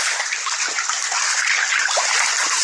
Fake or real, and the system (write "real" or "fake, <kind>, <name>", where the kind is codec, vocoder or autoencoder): real